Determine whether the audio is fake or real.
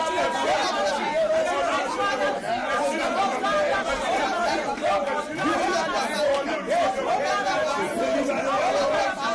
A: real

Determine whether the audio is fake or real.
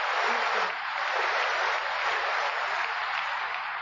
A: real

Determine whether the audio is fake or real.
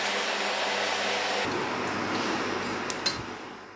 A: real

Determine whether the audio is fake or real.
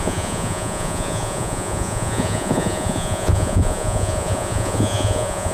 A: fake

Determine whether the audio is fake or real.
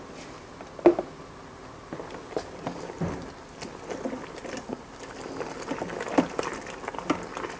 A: real